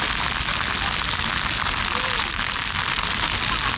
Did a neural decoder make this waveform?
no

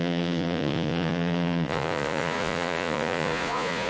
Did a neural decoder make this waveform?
yes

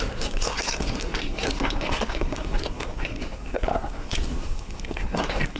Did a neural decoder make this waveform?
yes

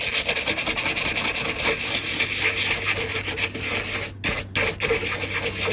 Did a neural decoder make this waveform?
no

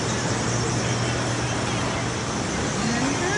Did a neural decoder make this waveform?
no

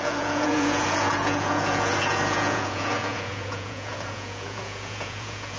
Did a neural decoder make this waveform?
yes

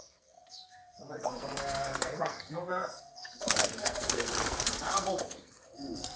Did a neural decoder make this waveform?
yes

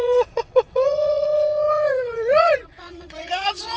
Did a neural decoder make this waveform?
yes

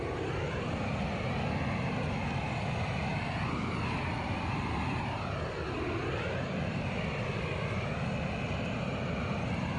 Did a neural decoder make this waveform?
no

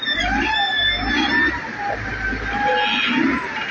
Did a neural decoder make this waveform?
no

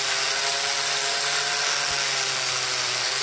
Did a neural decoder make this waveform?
no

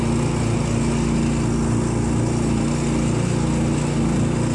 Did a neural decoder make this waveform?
no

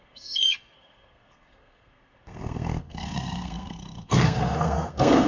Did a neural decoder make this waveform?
yes